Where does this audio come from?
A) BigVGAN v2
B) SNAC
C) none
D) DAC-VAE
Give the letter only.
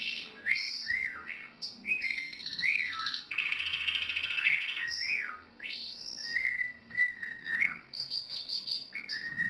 B